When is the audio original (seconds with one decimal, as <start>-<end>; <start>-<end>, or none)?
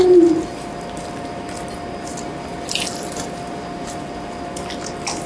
0.0-5.3